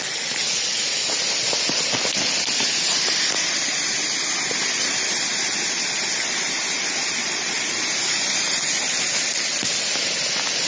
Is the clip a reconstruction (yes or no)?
no